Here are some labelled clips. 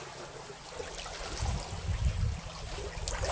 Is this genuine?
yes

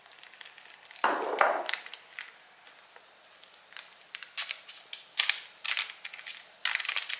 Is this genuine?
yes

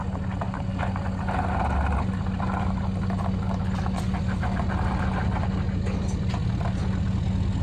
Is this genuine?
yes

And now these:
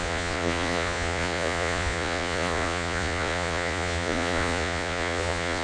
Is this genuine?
no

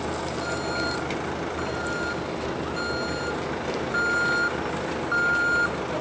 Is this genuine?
yes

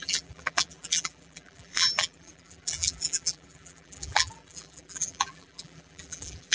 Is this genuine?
no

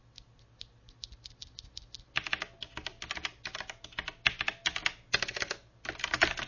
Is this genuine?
yes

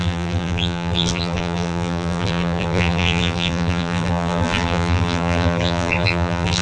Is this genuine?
no